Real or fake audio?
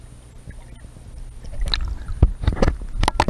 real